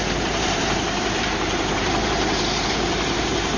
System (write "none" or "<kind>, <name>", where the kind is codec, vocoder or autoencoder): vocoder, BigVGAN v2